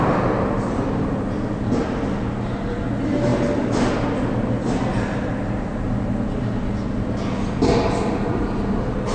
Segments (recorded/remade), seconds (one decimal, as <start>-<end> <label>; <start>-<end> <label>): 0.0-9.1 recorded